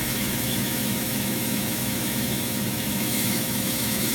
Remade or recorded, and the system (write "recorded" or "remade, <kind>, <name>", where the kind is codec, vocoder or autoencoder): remade, autoencoder, DAC-VAE